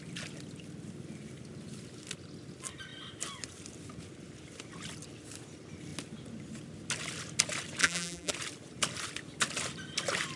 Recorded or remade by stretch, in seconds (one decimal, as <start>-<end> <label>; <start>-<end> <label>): 0.0-7.8 recorded; 7.8-8.3 remade; 8.3-10.4 recorded